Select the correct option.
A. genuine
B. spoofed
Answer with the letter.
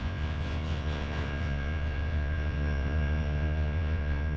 B